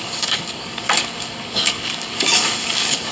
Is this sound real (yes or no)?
no